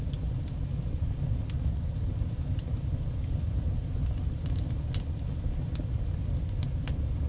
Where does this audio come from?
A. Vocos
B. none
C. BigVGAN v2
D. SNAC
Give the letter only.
B